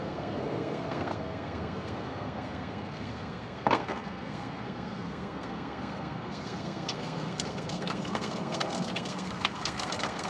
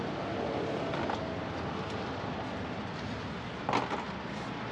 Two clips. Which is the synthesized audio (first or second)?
first